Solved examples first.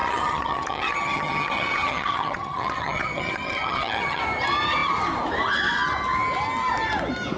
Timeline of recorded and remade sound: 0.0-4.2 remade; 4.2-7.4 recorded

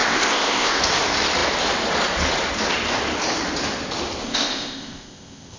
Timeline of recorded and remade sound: 0.0-0.8 remade; 0.8-4.2 recorded; 4.2-5.6 remade

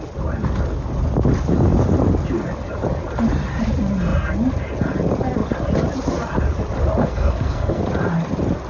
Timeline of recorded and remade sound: 0.0-7.0 recorded; 7.0-7.8 remade; 7.8-8.7 recorded

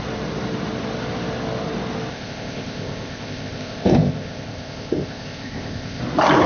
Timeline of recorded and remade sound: 0.0-2.1 recorded; 2.1-6.0 remade; 6.0-6.5 recorded